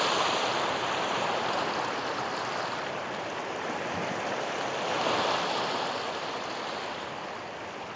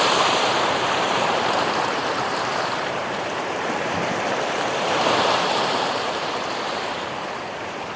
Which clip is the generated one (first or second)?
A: second